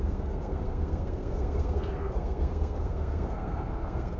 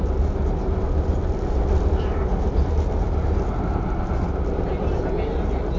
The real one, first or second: second